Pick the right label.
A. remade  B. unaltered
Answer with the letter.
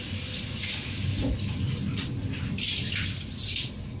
B